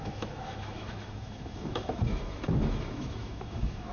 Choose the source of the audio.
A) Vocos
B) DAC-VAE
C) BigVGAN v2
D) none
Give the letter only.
B